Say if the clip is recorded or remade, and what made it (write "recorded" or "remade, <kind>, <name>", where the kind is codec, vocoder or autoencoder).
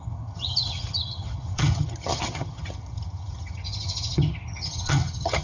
remade, vocoder, HiFi-GAN